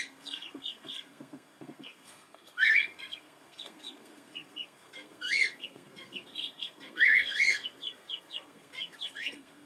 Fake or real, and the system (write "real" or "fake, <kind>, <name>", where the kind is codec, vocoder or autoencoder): fake, codec, SNAC